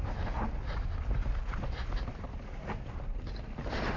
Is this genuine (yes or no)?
yes